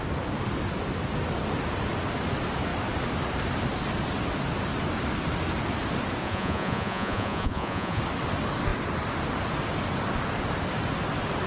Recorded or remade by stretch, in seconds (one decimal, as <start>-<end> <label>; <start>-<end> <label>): 0.0-6.2 recorded; 6.2-8.0 remade; 8.0-11.5 recorded